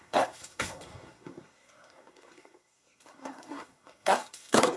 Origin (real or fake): fake